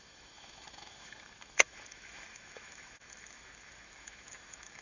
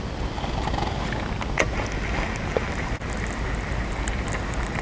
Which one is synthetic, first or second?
first